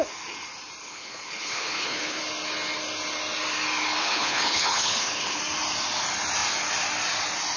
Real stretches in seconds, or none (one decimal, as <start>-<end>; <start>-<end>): 0.0-0.8; 2.2-4.0; 5.4-7.6